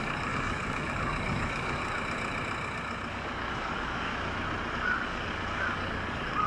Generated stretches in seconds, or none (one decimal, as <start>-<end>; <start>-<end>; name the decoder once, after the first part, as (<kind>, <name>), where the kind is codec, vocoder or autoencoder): 0.0-1.8 (codec, DAC); 3.1-4.1; 4.7-6.5

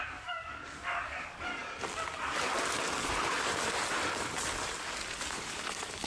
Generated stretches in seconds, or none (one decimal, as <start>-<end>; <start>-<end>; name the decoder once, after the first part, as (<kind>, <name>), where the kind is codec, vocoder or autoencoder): 0.0-1.5 (codec, DAC); 5.2-6.1

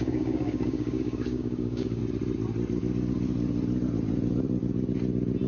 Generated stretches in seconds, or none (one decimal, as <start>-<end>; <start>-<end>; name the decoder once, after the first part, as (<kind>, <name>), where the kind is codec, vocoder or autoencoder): 0.0-2.0 (codec, DAC)

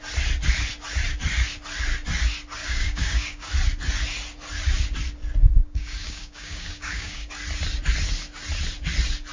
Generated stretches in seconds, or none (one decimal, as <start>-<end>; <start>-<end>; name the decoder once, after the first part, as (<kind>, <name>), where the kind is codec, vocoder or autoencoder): 2.6-3.5 (codec, DAC); 5.6-7.3